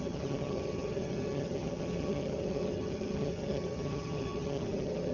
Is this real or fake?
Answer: fake